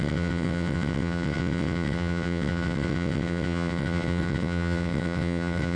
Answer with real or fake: fake